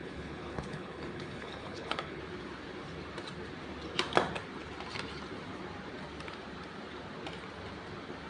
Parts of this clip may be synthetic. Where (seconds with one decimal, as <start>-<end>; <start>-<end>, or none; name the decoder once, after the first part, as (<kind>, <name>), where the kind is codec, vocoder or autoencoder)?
0.0-2.2 (codec, HILCodec)